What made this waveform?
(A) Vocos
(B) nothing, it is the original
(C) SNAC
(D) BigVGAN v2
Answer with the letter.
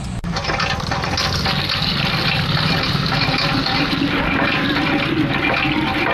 B